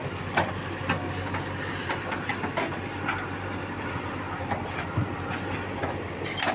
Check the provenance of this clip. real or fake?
real